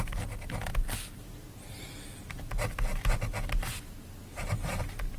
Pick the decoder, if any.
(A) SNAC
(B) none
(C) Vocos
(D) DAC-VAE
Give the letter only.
B